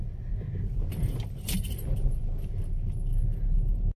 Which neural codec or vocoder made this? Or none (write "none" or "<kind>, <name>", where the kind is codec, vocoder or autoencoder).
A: none